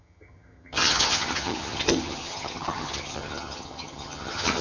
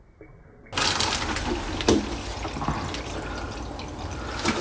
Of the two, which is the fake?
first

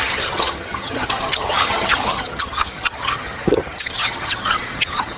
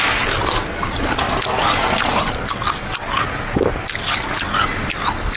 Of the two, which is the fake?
first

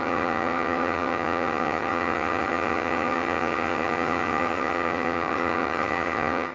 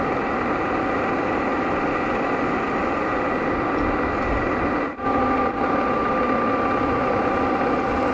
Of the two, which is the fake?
first